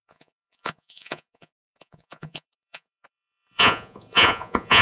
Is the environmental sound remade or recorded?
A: remade